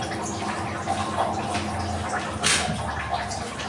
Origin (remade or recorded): recorded